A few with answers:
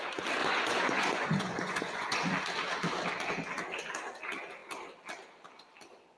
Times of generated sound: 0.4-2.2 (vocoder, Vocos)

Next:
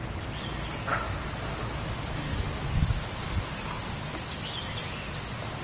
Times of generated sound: none